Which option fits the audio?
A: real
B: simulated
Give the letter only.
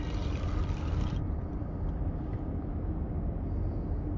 A